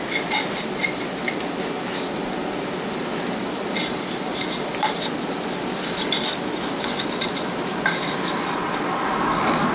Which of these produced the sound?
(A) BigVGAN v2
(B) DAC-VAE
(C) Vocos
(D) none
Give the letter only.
D